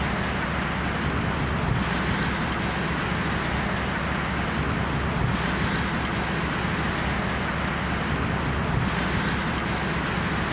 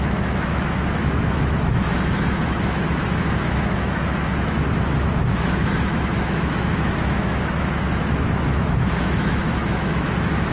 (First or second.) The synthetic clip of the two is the second